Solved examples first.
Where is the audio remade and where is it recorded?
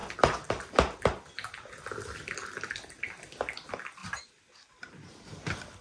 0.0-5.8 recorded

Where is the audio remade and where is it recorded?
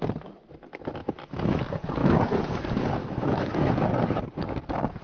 0.0-1.0 recorded; 1.0-1.6 remade; 1.6-2.0 recorded; 2.0-2.6 remade; 2.6-3.0 recorded; 3.0-3.9 remade; 3.9-5.0 recorded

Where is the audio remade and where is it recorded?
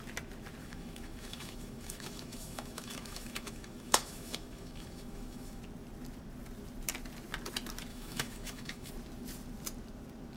0.0-0.6 recorded; 0.6-5.6 remade; 5.6-7.9 recorded; 7.9-8.9 remade; 8.9-10.4 recorded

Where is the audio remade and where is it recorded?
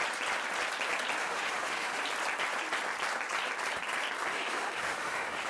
0.0-1.2 recorded; 1.2-2.0 remade; 2.0-4.3 recorded; 4.3-5.5 remade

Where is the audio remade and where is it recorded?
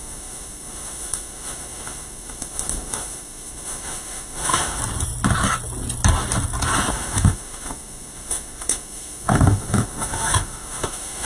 0.0-4.8 remade; 4.8-6.9 recorded; 6.9-11.3 remade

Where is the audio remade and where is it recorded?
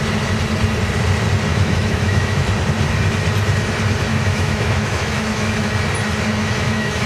0.0-1.5 recorded; 1.5-2.5 remade; 2.5-4.1 recorded; 4.1-5.7 remade; 5.7-6.4 recorded; 6.4-7.1 remade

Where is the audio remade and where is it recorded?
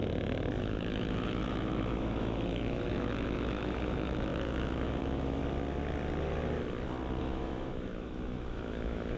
0.0-0.6 recorded; 0.6-5.4 remade; 5.4-7.2 recorded; 7.2-9.2 remade